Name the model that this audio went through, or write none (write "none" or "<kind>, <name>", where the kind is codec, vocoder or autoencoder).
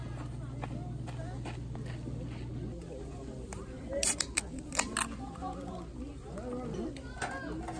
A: none